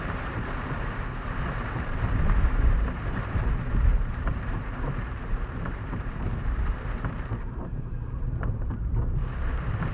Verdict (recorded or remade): remade